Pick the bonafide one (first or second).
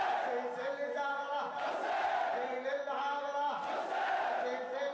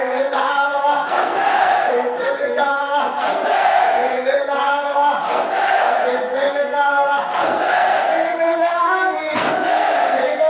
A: first